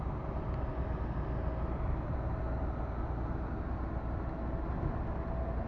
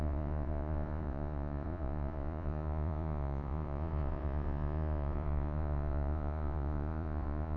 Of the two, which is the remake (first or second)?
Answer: second